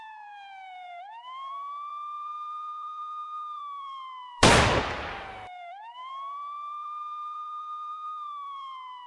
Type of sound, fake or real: fake